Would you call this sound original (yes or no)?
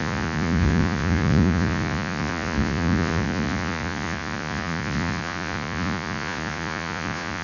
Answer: no